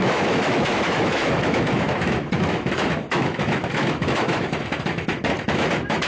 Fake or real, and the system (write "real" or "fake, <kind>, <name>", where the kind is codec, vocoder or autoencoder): fake, autoencoder, DAC-VAE